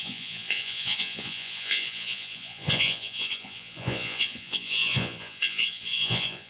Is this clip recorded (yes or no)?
no